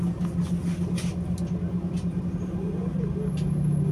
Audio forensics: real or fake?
real